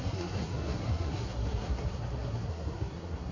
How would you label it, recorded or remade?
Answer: remade